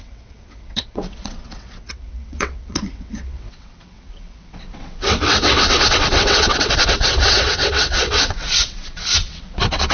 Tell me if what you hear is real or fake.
fake